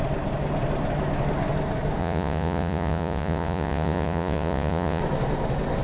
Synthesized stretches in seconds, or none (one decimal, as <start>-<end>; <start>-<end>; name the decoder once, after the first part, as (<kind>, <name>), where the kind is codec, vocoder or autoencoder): 2.0-5.0 (vocoder, Vocos)